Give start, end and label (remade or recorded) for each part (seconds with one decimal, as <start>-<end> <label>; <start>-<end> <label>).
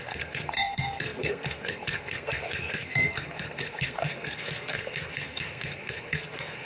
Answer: 0.0-6.7 remade